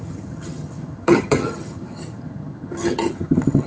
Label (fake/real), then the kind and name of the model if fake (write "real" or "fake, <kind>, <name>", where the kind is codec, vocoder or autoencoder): fake, vocoder, HiFi-GAN